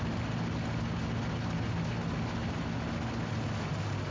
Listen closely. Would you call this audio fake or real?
real